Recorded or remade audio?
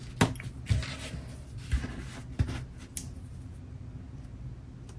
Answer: recorded